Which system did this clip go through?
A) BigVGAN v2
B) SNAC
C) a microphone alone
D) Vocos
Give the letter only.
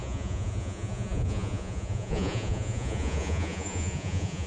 D